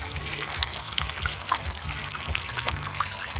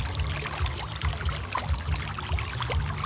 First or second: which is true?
second